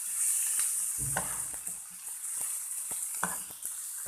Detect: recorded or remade recorded